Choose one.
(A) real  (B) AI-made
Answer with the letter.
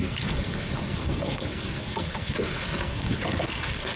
B